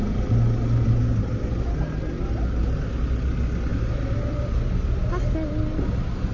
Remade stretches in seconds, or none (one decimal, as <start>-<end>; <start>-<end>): none